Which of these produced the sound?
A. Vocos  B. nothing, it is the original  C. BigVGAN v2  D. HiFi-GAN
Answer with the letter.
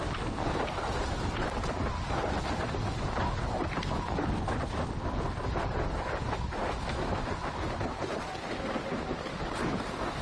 B